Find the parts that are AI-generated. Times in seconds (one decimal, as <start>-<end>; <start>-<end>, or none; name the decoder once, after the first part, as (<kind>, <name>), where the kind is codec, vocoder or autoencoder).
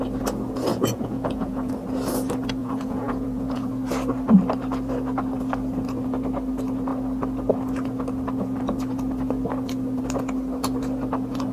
0.7-1.7 (vocoder, Vocos); 2.6-3.7